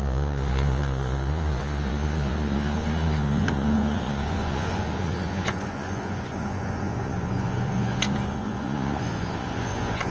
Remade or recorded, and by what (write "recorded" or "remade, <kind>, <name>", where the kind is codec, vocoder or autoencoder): remade, vocoder, Vocos